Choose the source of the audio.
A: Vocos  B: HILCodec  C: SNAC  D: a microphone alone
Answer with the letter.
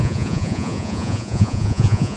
A